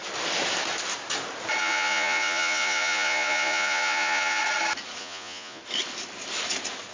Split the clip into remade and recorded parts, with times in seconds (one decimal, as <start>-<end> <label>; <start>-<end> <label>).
0.0-1.6 recorded; 1.6-4.4 remade; 4.4-5.0 recorded; 5.0-5.6 remade; 5.6-6.9 recorded